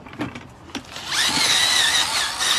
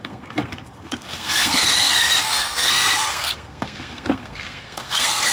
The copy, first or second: second